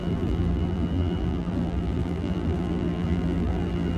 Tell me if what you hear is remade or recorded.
remade